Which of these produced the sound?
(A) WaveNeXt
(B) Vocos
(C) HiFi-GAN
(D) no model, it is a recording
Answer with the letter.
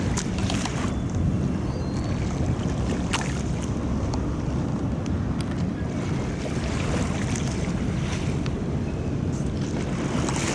D